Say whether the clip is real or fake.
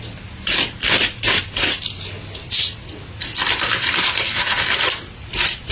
real